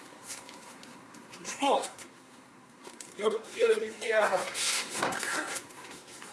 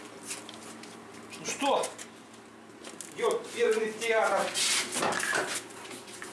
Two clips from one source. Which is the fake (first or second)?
first